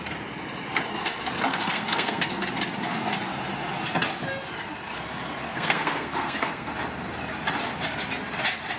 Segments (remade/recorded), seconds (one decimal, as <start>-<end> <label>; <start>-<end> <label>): 0.0-1.5 recorded; 1.5-2.3 remade; 2.3-5.5 recorded; 5.5-6.7 remade; 6.7-8.8 recorded